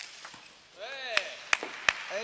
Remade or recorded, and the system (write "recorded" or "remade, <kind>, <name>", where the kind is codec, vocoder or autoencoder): recorded